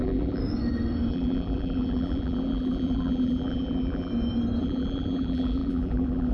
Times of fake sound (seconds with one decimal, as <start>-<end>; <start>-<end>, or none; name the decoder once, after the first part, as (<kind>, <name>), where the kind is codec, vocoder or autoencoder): 0.0-0.4 (vocoder, BigVGAN v2); 1.1-4.1; 4.6-6.3